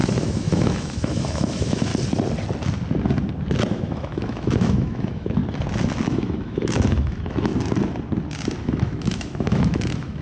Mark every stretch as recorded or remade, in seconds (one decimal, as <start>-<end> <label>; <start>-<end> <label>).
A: 0.0-1.9 remade; 1.9-3.7 recorded; 3.7-5.4 remade; 5.4-6.1 recorded; 6.1-7.5 remade; 7.5-8.6 recorded; 8.6-10.2 remade